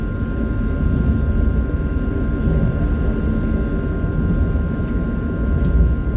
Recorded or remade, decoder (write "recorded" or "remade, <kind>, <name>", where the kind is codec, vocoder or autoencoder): recorded